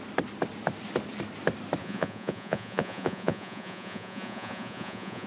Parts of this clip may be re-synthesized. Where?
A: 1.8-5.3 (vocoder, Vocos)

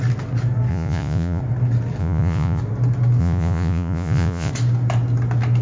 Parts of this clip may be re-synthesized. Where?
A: 0.7-1.4 (vocoder, Vocos); 2.0-2.6; 3.2-4.5

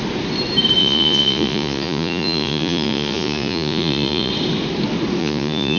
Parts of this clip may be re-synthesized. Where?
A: 0.8-4.3 (vocoder, Vocos); 5.2-5.8